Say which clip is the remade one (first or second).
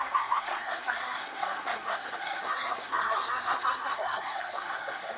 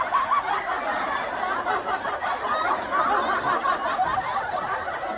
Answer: first